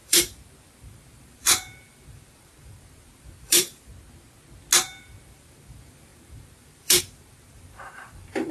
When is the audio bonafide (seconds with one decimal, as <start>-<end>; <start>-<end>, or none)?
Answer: 3.9-5.0